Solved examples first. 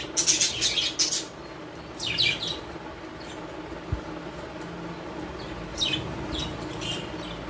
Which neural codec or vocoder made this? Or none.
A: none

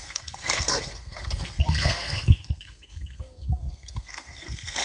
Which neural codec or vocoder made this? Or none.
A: codec, SNAC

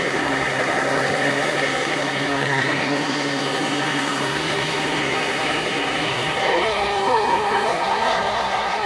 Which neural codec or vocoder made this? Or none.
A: codec, SNAC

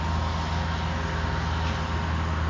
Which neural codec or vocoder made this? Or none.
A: none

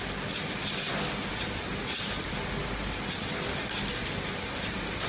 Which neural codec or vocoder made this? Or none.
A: none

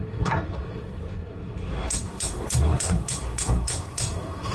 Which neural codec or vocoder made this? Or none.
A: codec, SNAC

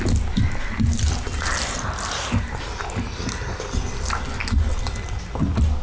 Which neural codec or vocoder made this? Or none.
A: none